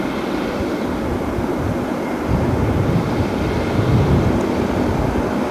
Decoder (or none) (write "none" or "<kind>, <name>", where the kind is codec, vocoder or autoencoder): none